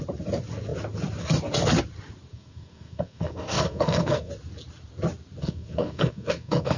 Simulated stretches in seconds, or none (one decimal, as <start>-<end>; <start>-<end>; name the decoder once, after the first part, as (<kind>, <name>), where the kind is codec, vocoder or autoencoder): 2.3-4.3 (codec, SNAC); 5.4-6.8